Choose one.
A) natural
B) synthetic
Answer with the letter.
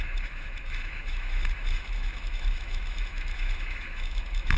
B